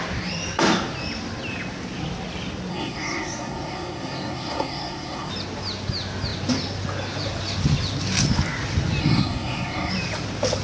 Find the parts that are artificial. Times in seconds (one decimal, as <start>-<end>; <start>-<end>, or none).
2.7-5.3; 9.0-9.9

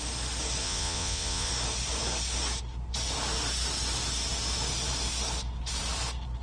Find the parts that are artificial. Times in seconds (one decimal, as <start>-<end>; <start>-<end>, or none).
0.6-1.5